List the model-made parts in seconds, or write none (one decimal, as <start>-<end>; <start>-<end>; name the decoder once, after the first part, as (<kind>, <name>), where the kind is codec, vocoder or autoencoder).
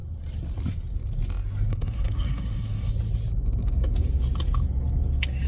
1.7-2.9 (codec, SNAC)